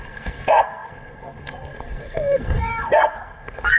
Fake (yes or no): yes